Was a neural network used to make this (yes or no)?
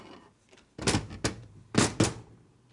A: no